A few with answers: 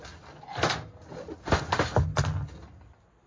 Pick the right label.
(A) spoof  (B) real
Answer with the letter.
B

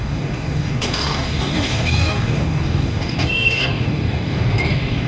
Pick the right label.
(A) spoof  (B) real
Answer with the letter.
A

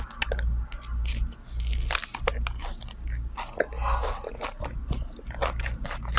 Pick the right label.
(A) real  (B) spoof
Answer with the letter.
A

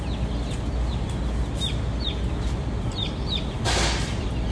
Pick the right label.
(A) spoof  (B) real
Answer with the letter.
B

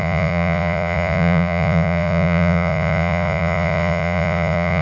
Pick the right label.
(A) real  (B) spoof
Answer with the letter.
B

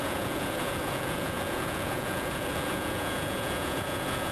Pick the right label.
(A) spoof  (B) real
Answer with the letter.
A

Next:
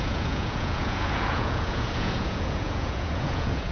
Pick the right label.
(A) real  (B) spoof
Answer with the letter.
B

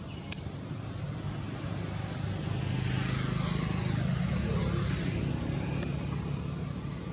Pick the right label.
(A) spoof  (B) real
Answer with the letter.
B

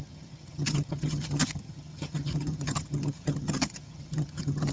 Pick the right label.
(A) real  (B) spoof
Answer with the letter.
B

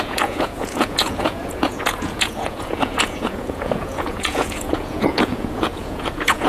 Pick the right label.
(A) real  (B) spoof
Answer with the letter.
B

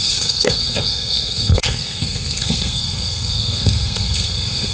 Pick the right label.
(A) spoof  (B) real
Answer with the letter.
A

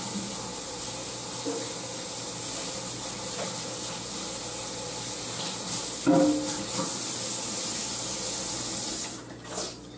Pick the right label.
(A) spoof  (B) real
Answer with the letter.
B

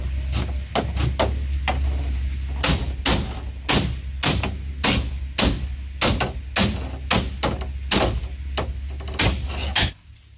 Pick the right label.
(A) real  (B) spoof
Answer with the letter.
A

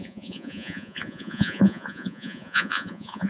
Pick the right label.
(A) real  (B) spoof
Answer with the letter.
B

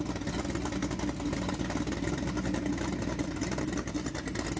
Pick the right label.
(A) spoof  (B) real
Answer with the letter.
B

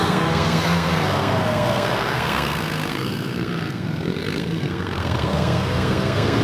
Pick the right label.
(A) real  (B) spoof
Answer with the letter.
B